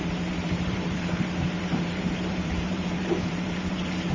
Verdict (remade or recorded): remade